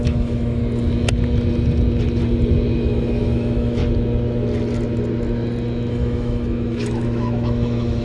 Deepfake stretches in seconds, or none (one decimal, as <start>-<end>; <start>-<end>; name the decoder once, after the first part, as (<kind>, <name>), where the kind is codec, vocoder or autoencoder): 0.0-0.6 (autoencoder, DAC-VAE); 2.8-3.8; 5.9-8.0